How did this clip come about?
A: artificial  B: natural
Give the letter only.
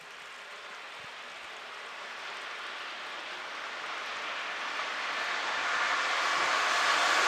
B